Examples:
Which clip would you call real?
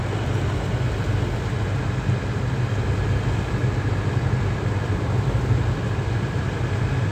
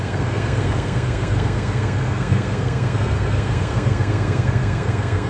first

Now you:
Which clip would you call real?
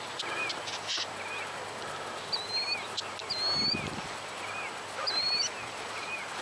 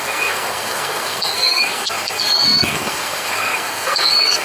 first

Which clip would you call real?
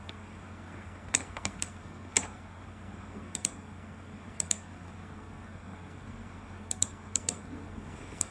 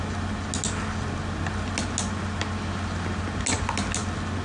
second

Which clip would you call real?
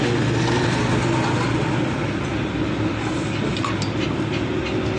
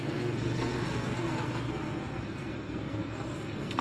first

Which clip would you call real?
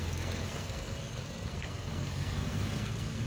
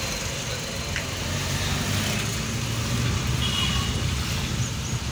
second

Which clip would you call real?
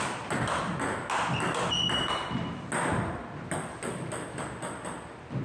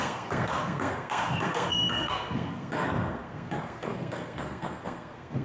first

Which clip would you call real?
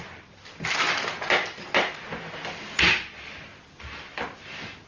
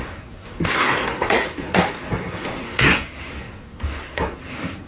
first